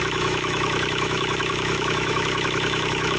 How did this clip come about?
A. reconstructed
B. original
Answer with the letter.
A